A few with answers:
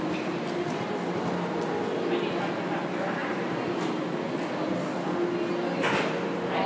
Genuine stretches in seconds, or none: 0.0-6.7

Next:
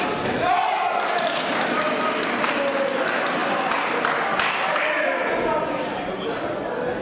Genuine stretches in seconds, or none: 0.0-7.0

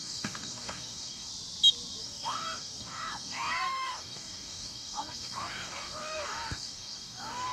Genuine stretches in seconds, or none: 1.3-2.0